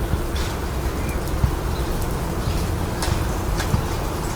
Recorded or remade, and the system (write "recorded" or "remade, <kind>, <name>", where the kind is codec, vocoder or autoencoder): recorded